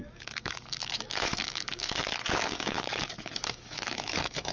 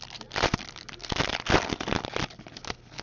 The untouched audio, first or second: second